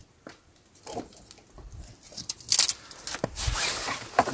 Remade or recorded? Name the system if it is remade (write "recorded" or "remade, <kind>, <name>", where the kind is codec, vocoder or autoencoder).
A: recorded